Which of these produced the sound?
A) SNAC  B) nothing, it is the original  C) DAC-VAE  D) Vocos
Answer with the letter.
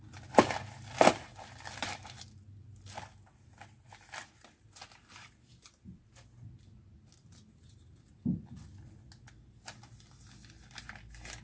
B